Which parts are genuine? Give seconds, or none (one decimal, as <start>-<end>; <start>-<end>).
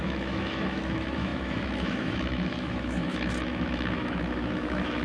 none